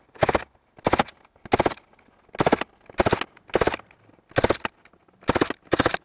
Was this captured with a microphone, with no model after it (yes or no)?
yes